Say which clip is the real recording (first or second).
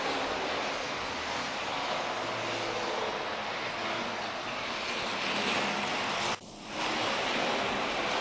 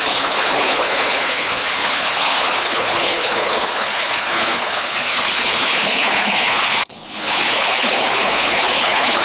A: first